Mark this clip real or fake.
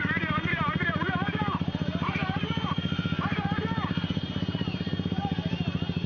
real